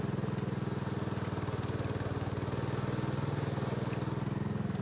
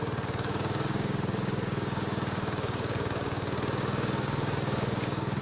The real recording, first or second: first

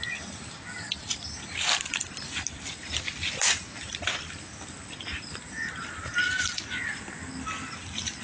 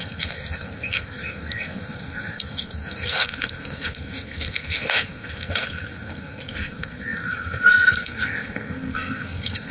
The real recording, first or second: first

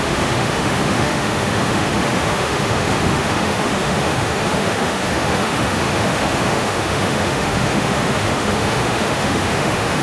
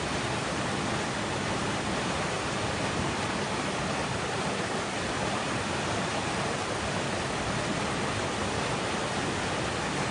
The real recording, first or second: second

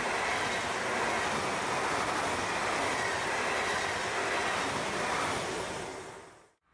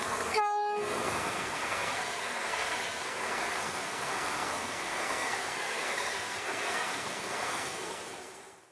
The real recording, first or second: first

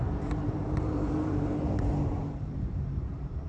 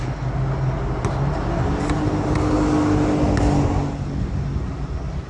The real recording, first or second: second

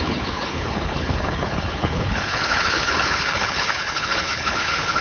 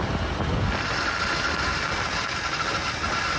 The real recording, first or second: second